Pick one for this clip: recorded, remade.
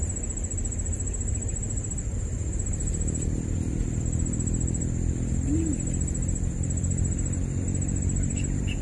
recorded